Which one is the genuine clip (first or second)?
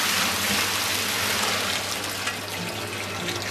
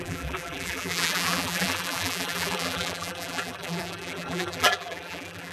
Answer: first